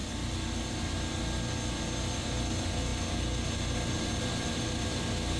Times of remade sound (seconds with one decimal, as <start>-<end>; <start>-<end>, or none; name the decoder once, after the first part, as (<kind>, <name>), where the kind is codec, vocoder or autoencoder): none

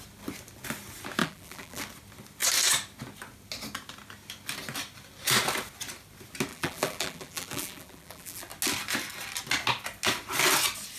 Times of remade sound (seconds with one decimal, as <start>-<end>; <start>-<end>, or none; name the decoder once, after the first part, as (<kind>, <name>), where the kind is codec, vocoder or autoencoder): 1.2-1.8 (vocoder, BigVGAN v2); 6.5-8.5

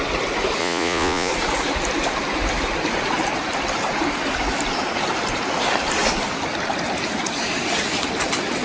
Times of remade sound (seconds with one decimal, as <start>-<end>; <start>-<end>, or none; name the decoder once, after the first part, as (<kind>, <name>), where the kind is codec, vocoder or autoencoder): 0.6-1.3 (vocoder, Vocos)

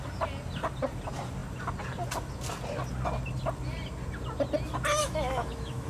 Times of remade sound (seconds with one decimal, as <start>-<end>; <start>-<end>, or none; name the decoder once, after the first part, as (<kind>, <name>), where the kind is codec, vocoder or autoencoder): 5.0-5.9 (autoencoder, DAC-VAE)

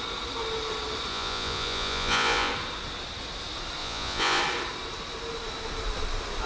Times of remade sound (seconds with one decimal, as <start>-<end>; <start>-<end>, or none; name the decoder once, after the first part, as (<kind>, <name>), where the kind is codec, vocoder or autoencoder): 1.1-2.5 (vocoder, Vocos); 3.8-4.4

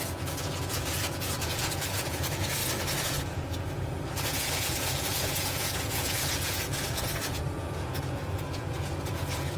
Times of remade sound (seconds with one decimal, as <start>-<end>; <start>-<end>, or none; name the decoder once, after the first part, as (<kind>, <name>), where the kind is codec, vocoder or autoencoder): 0.0-2.6 (vocoder, Vocos); 3.1-9.6

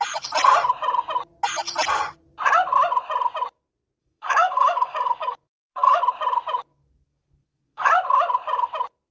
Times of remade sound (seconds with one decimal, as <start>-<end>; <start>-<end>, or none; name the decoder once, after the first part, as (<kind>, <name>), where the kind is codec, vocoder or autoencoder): 4.0-6.0 (codec, DAC); 6.7-7.9